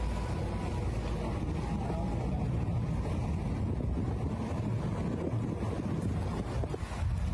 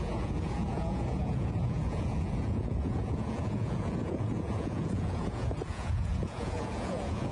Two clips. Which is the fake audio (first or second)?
second